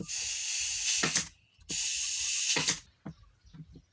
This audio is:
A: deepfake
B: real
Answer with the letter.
B